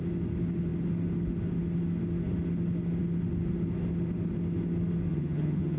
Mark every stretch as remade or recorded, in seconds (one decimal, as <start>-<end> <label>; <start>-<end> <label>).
0.0-5.1 recorded; 5.1-5.8 remade